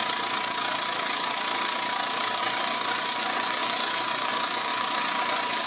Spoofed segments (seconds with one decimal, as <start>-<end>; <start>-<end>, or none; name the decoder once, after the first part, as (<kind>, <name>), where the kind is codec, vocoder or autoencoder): 2.4-5.7 (vocoder, Vocos)